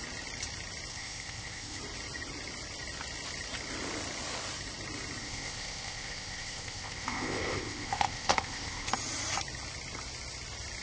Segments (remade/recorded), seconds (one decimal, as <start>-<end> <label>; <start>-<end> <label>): 0.0-0.9 recorded; 0.9-1.8 remade; 1.8-5.2 recorded; 5.2-8.9 remade; 8.9-10.8 recorded